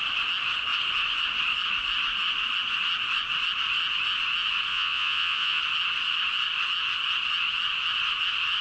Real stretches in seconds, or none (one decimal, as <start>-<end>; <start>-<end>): 0.0-4.7; 5.6-8.6